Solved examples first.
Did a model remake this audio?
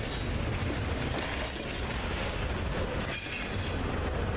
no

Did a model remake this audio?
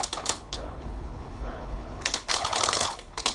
yes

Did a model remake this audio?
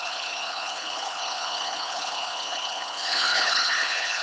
yes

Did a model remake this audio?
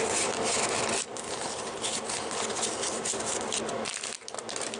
no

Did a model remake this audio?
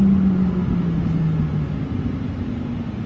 no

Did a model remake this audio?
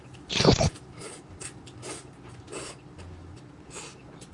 no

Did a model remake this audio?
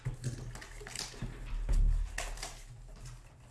no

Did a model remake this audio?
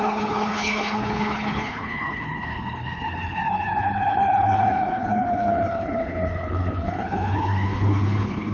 yes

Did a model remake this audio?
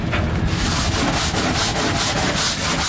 no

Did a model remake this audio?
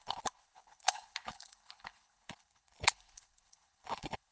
yes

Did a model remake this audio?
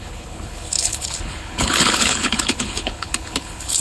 yes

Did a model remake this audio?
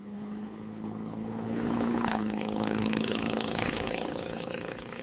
yes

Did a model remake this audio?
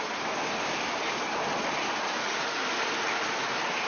no